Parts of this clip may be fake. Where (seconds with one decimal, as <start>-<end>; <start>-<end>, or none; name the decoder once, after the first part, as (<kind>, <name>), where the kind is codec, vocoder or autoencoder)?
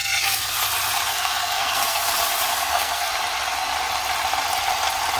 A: 0.0-0.6 (codec, SNAC); 1.1-2.1; 2.5-3.1